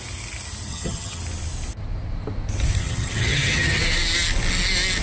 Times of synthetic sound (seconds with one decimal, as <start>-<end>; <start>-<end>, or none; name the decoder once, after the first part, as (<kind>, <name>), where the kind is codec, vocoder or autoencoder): 0.7-1.2 (vocoder, HiFi-GAN); 2.8-3.8